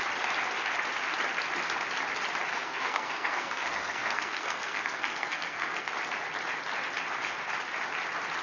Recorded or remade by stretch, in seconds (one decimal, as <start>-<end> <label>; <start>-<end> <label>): 0.0-2.5 recorded; 2.5-5.9 remade; 5.9-8.4 recorded